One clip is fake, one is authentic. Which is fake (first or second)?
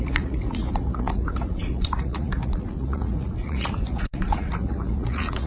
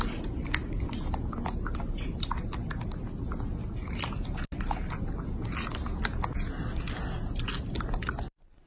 first